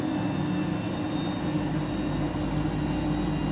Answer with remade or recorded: recorded